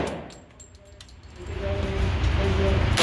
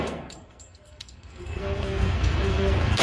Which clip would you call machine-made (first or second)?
second